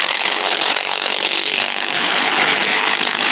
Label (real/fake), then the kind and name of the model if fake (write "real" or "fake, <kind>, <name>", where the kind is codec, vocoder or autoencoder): fake, codec, HILCodec